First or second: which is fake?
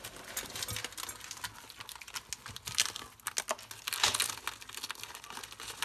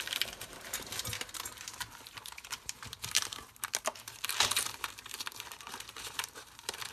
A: second